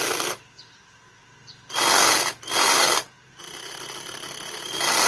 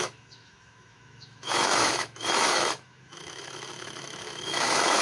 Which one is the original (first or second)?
first